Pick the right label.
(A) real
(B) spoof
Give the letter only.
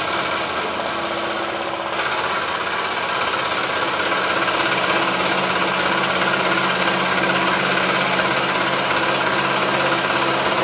A